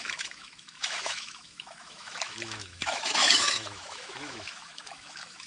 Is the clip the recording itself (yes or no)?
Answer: no